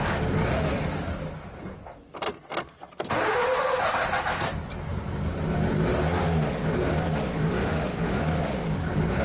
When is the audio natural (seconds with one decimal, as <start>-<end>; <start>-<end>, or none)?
0.0-7.6; 8.2-9.2